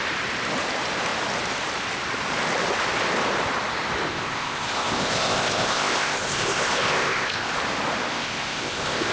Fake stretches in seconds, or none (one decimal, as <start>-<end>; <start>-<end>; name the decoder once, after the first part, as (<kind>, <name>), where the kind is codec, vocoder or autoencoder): 4.1-7.5 (codec, ZipCodec); 8.1-9.1